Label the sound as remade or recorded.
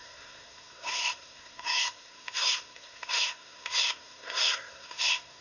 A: remade